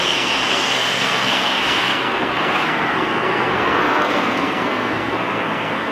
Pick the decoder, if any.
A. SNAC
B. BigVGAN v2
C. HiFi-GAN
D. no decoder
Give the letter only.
A